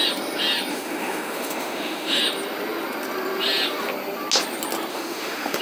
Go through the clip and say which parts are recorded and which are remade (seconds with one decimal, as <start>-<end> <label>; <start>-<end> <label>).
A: 0.0-0.7 recorded; 0.7-2.2 remade; 2.2-4.9 recorded; 4.9-5.6 remade